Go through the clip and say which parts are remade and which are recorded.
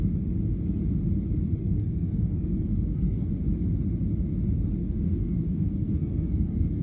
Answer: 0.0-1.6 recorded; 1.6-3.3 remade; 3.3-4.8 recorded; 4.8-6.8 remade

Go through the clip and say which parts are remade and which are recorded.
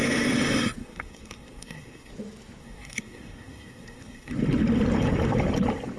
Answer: 0.0-0.8 recorded; 0.8-2.1 remade; 2.1-2.6 recorded; 2.6-4.3 remade; 4.3-6.0 recorded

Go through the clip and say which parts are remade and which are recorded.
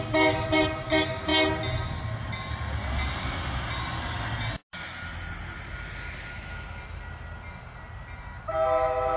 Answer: 0.0-9.2 recorded